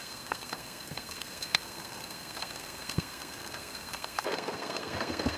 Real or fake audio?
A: fake